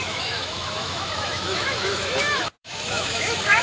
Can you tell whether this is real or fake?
fake